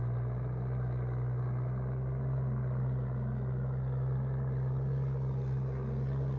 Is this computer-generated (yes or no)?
no